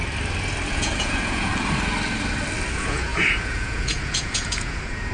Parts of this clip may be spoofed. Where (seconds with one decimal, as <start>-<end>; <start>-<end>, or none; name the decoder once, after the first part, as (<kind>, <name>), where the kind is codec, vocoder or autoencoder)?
0.7-1.5 (vocoder, Vocos); 2.7-5.1